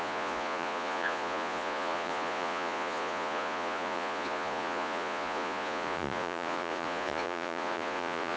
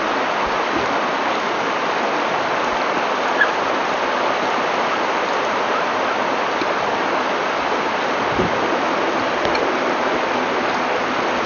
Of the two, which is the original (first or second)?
second